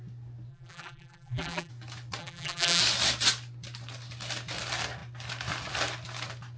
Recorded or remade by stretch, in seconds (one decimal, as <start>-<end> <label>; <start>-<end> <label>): 0.0-0.5 recorded; 0.5-1.7 remade; 1.7-2.2 recorded; 2.2-2.8 remade; 2.8-6.6 recorded